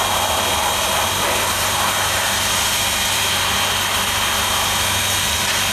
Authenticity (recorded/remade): recorded